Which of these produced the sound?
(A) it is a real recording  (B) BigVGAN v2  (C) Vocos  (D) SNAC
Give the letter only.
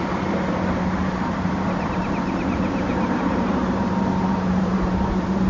B